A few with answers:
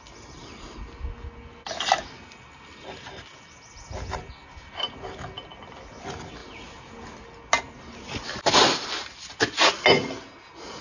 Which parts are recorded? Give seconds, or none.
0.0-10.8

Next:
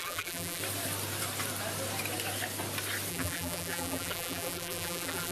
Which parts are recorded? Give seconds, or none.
0.6-3.1

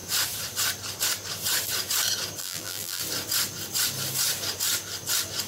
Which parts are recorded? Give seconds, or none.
0.0-2.4; 3.0-5.5

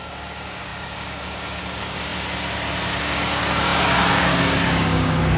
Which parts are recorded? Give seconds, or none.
2.1-3.0

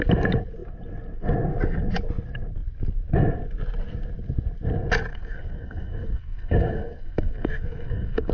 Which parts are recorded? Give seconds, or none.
0.0-5.1